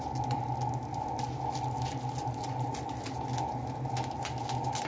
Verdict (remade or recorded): recorded